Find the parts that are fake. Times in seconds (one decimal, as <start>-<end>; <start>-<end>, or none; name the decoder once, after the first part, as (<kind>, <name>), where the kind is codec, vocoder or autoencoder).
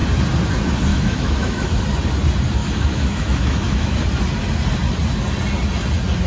0.9-1.8 (autoencoder, DAC-VAE); 2.6-4.0